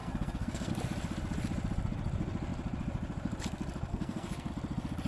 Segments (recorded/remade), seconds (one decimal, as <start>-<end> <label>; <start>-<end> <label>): 0.0-0.7 remade; 0.7-3.9 recorded; 3.9-4.5 remade; 4.5-5.1 recorded